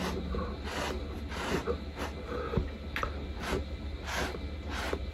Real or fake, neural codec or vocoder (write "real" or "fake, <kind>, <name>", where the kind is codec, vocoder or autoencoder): real